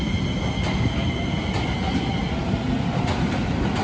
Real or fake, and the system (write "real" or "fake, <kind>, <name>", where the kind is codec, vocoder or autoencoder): real